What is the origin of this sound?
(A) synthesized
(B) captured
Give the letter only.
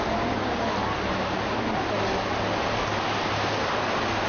B